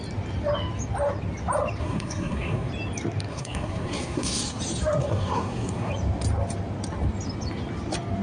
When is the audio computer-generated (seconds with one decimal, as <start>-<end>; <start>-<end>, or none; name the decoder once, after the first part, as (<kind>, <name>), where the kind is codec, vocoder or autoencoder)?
1.8-2.7 (codec, SNAC); 3.3-4.6; 5.0-5.9